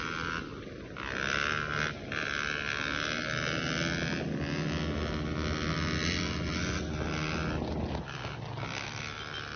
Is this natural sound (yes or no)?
yes